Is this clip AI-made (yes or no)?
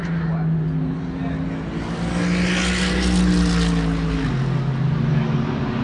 no